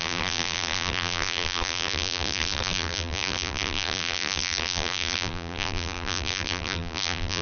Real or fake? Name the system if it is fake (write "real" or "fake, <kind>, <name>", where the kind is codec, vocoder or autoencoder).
fake, vocoder, BigVGAN v2